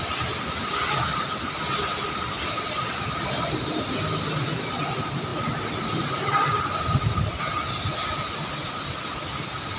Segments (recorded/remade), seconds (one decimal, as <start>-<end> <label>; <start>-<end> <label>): 0.0-5.3 recorded; 5.3-7.4 remade; 7.4-9.8 recorded